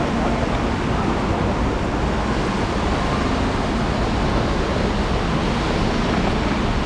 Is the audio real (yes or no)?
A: yes